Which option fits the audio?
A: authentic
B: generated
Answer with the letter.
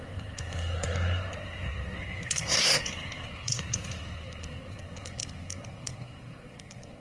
B